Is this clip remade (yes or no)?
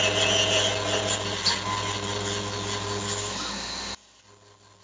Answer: no